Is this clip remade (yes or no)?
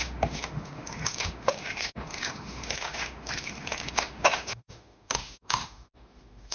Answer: yes